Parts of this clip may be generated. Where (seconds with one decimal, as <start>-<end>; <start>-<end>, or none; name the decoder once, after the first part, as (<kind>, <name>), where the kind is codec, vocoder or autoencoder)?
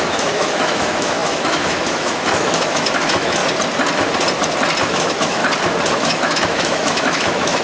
0.0-3.4 (autoencoder, DAC-VAE); 4.9-5.4; 6.0-7.6